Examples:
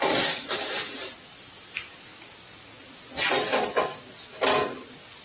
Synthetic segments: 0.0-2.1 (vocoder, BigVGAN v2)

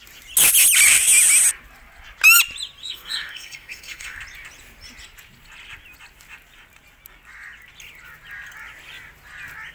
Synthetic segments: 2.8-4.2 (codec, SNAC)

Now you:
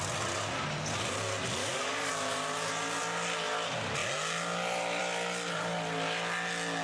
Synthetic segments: 1.6-2.1 (codec, DAC)